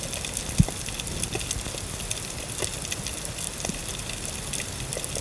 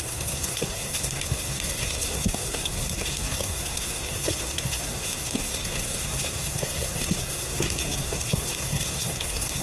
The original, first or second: first